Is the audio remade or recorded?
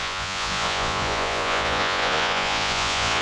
remade